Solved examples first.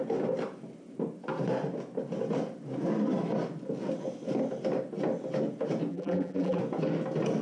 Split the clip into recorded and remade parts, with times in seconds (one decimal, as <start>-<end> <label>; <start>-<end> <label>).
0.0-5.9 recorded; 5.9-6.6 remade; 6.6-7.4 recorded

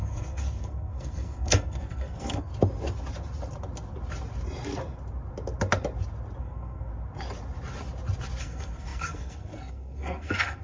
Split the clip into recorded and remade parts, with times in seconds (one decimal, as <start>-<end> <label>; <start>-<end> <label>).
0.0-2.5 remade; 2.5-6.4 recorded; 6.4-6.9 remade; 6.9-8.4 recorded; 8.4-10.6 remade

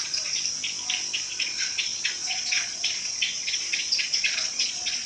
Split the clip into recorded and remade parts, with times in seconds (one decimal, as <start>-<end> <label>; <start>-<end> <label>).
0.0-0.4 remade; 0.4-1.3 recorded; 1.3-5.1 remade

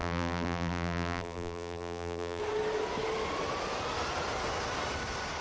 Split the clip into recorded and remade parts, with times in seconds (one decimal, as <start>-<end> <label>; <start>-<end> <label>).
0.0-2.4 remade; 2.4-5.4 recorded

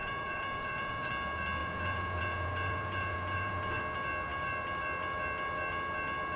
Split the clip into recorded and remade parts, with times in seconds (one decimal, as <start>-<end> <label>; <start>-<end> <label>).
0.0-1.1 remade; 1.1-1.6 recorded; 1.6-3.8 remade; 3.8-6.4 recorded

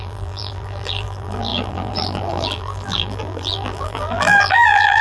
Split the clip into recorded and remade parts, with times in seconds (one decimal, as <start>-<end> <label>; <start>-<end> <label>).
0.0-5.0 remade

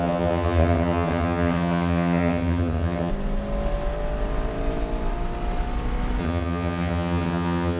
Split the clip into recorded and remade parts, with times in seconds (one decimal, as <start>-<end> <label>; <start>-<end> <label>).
0.0-3.1 remade; 3.1-6.2 recorded; 6.2-7.8 remade